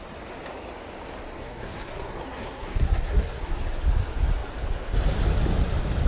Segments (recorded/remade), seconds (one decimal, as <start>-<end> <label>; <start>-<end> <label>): 0.0-1.4 recorded; 1.4-3.6 remade; 3.6-6.1 recorded